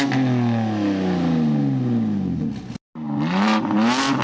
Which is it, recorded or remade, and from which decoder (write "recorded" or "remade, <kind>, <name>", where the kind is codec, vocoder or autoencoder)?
recorded